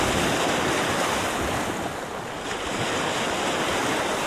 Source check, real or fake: real